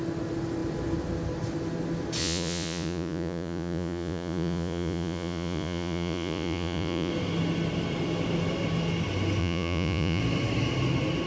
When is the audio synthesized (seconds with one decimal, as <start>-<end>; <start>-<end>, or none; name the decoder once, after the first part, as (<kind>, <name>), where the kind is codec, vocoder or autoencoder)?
2.2-7.1 (vocoder, Vocos); 9.4-10.2